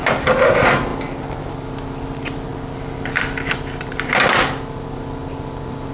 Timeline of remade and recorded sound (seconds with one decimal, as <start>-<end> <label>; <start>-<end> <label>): 0.0-5.9 recorded